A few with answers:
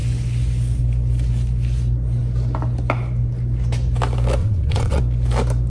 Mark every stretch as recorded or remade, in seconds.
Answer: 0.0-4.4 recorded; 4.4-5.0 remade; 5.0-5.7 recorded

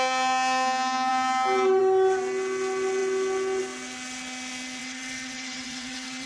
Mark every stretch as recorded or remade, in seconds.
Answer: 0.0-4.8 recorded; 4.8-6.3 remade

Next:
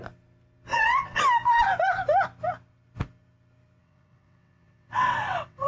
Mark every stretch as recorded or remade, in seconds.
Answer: 0.0-0.7 recorded; 0.7-1.2 remade; 1.2-3.8 recorded; 3.8-5.7 remade

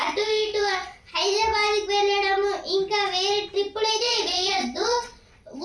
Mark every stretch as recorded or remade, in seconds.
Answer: 0.0-1.1 remade; 1.1-4.0 recorded; 4.0-5.6 remade

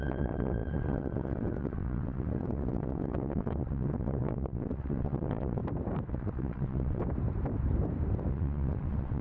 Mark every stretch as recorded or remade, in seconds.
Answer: 0.0-5.6 remade; 5.6-6.1 recorded; 6.1-7.0 remade; 7.0-8.3 recorded; 8.3-9.2 remade